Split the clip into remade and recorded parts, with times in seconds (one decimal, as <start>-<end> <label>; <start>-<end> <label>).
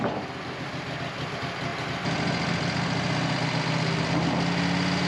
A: 0.0-5.1 recorded